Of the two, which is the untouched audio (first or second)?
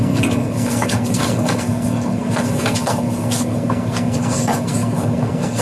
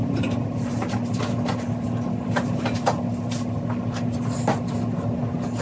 second